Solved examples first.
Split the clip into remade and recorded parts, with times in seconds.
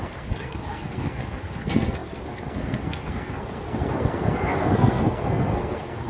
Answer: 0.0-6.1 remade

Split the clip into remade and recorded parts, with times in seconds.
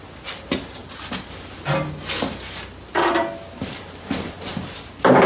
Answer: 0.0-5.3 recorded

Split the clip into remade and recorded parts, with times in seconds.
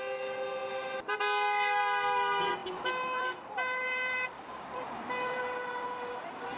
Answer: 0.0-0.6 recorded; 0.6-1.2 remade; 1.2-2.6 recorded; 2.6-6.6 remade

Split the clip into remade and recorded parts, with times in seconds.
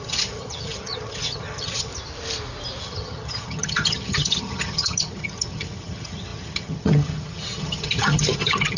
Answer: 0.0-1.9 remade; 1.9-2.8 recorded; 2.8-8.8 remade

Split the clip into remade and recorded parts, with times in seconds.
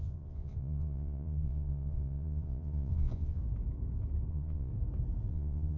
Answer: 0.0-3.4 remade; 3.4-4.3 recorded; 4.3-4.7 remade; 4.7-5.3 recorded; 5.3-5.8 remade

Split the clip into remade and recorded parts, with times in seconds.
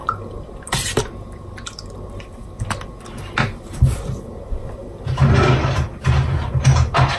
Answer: 0.0-1.0 remade; 1.0-7.2 recorded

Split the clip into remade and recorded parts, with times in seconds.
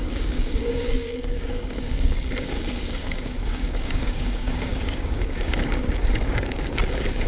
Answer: 0.0-7.3 remade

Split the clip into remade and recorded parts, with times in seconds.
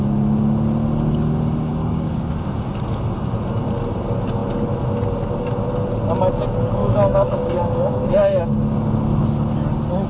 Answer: 0.0-1.7 recorded; 1.7-2.3 remade; 2.3-6.8 recorded; 6.8-8.4 remade; 8.4-10.1 recorded